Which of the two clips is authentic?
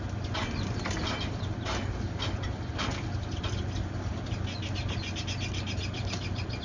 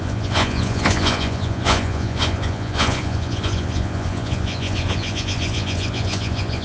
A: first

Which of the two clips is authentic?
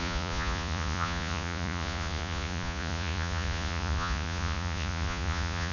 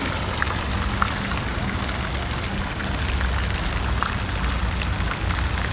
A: second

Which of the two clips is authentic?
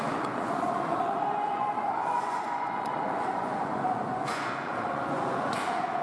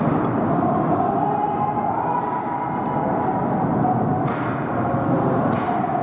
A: second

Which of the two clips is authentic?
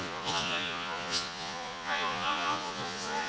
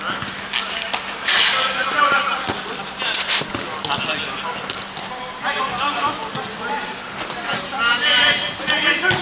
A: second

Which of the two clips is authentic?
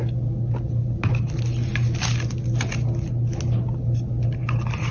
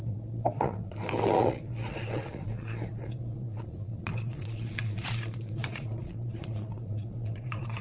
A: first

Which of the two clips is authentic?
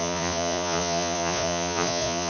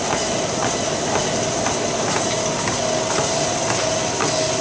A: second